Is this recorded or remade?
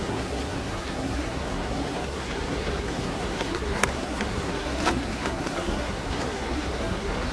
remade